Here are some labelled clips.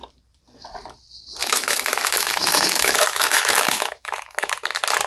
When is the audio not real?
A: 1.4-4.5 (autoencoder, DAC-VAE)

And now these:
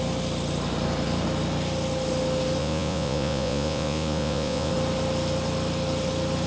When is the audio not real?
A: 2.6-4.7 (vocoder, Vocos)

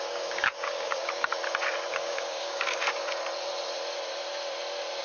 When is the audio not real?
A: 0.0-1.3 (codec, DAC); 1.9-3.0

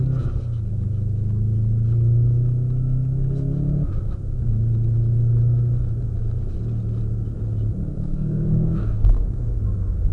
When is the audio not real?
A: 7.9-9.6 (codec, SNAC)

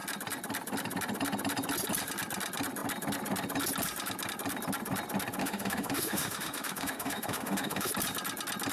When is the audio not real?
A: 5.4-7.9 (autoencoder, DAC-VAE)

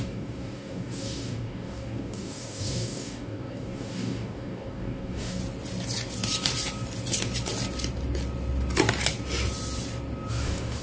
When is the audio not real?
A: 0.0-5.4 (codec, DAC); 10.3-10.8